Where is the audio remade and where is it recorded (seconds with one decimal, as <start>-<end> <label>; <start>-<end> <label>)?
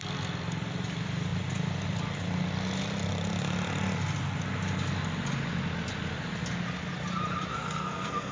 0.0-7.5 recorded; 7.5-8.3 remade